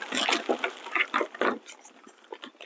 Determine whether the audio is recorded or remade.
recorded